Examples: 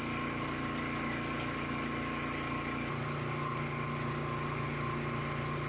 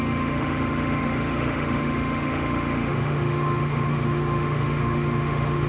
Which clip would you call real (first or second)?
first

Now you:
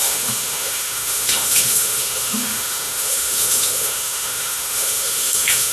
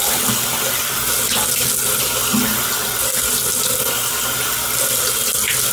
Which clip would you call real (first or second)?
second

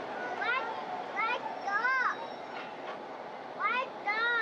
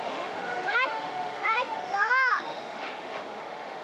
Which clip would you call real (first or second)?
first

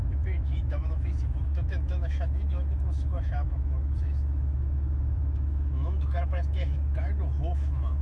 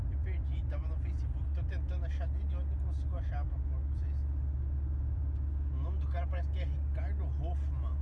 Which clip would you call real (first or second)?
second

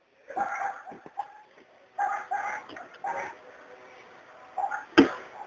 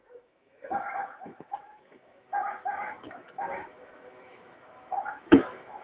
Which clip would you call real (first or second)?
first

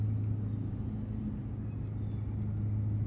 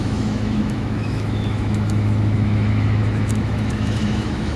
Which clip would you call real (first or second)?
first